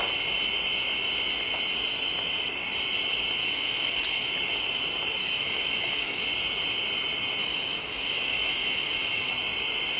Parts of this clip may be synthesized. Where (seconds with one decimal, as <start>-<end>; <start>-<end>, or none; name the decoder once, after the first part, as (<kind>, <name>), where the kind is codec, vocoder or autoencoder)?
3.4-4.3 (autoencoder, DAC-VAE); 5.2-6.2; 7.4-9.3